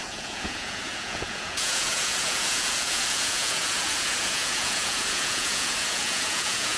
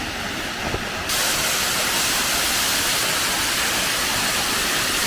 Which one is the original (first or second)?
second